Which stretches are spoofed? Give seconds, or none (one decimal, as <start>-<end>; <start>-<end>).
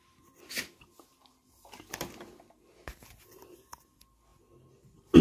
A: none